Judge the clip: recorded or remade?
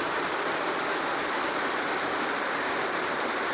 recorded